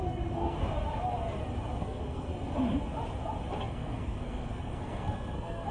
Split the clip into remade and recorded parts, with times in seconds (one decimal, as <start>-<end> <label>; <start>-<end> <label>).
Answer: 0.0-0.6 remade; 0.6-1.8 recorded; 1.8-2.3 remade; 2.3-3.6 recorded; 3.6-5.7 remade